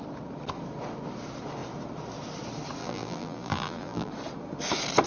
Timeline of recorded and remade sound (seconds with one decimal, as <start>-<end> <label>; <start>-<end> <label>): 0.0-2.8 recorded; 2.8-4.1 remade; 4.1-5.1 recorded